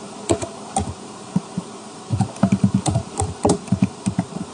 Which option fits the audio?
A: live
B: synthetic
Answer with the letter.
B